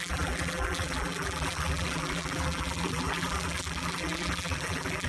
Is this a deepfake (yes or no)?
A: yes